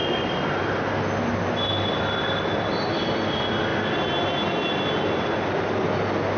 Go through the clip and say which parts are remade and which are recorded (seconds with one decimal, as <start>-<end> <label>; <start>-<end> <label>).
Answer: 0.0-6.4 recorded